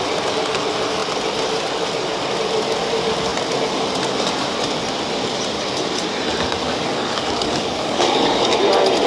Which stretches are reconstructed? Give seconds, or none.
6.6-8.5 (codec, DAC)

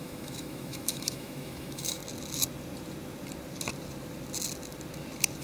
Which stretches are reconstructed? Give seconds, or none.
0.0-2.0 (autoencoder, DAC-VAE)

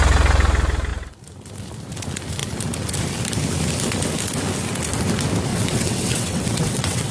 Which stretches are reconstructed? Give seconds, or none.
5.5-7.1 (vocoder, WaveNeXt)

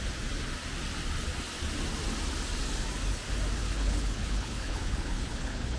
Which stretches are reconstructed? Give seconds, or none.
3.6-5.8 (codec, HILCodec)

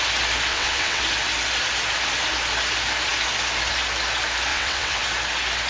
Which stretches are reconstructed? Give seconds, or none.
0.5-1.0 (vocoder, WaveNeXt); 4.5-5.0